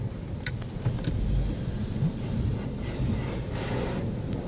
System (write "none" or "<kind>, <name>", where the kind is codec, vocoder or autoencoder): none